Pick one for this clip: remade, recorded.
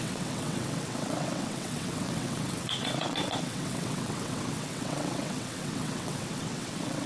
remade